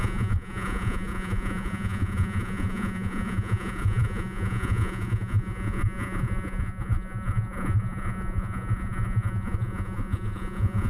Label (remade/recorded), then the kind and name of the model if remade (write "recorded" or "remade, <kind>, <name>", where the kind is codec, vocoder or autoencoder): remade, vocoder, Vocos